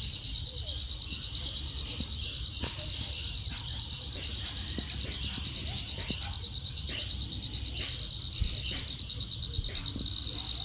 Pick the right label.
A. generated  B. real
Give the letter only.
B